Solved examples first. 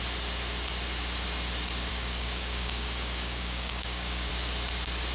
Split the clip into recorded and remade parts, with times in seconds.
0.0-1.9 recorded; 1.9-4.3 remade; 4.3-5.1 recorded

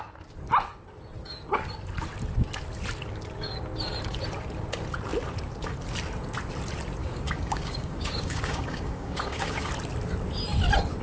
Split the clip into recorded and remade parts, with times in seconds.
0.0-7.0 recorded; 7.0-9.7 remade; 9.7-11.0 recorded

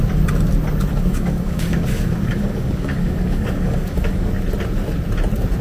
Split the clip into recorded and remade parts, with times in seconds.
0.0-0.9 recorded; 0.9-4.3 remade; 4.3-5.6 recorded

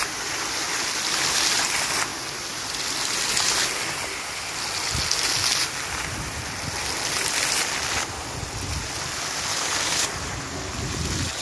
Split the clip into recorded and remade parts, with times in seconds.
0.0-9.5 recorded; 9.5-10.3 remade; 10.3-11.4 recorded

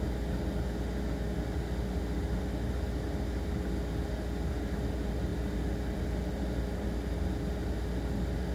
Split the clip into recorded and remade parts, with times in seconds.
0.0-8.5 recorded